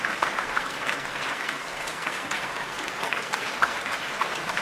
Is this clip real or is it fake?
fake